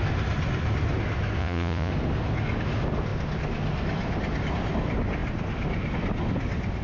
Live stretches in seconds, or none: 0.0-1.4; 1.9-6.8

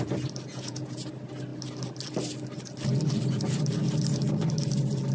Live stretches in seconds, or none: 0.0-0.5; 1.1-5.1

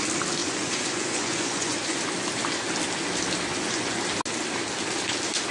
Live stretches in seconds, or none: 0.0-0.4; 2.0-3.5; 4.0-5.5

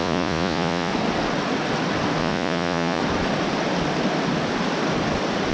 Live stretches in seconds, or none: 0.9-2.2; 3.0-5.5

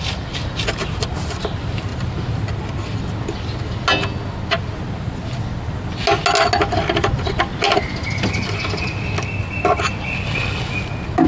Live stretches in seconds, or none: 0.0-11.3

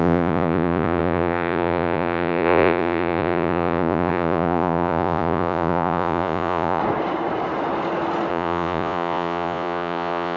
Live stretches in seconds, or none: 6.8-8.3

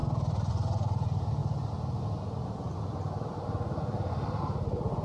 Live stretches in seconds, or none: 0.0-5.0

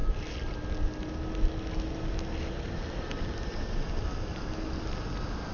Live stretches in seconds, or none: 0.0-5.5